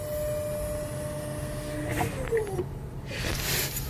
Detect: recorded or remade recorded